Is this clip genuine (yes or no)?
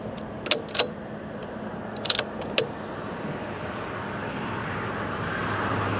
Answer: yes